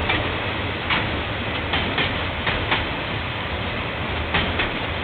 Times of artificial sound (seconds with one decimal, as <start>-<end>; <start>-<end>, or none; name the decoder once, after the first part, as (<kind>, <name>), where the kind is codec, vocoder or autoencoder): 3.0-4.0 (vocoder, BigVGAN v2); 4.6-5.0

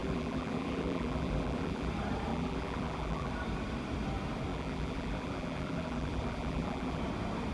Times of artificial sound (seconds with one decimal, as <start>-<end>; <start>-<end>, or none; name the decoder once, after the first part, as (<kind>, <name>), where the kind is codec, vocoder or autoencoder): 0.0-1.9 (vocoder, BigVGAN v2); 2.3-3.3; 4.5-7.0

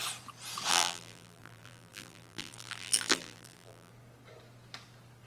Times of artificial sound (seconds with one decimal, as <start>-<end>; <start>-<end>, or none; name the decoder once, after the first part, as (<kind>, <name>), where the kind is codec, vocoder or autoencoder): 0.7-3.9 (vocoder, BigVGAN v2)

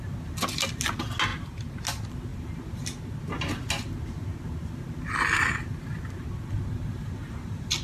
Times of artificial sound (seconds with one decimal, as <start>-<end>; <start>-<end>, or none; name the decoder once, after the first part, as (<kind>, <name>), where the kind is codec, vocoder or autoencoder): 1.3-1.8 (vocoder, BigVGAN v2)

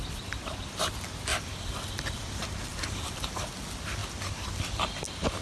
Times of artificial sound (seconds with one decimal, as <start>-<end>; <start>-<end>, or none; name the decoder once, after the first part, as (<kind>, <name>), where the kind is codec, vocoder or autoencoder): 1.3-2.0 (vocoder, BigVGAN v2); 2.7-3.5

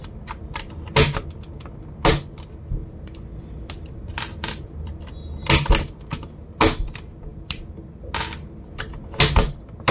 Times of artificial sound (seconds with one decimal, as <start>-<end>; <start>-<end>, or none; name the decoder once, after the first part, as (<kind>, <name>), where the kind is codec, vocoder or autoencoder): 2.8-5.0 (vocoder, BigVGAN v2); 7.3-8.1

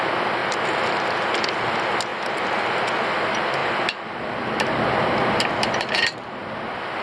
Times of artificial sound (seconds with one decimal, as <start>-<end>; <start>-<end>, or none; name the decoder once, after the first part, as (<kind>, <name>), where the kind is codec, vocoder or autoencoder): 0.4-1.3 (vocoder, BigVGAN v2); 2.1-2.6

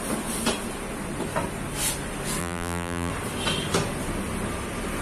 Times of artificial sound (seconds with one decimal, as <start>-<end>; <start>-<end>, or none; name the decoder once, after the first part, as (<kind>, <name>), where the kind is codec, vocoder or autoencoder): 2.4-3.1 (vocoder, BigVGAN v2)